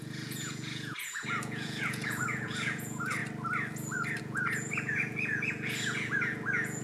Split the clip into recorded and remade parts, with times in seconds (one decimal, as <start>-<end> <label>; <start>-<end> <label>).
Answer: 0.0-3.2 remade; 3.2-4.2 recorded; 4.2-6.8 remade